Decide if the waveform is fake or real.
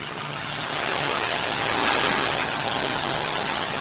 fake